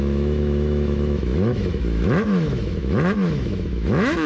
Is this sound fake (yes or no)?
yes